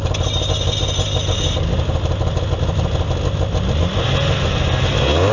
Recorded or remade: recorded